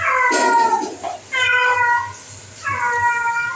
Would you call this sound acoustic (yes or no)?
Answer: yes